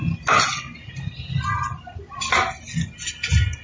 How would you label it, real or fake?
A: real